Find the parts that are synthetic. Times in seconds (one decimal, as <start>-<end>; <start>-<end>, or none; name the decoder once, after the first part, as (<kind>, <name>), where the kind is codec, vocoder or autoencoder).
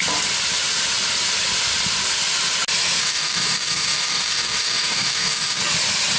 3.0-5.6 (codec, DAC)